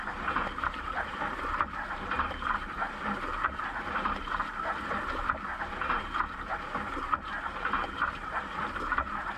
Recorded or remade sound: remade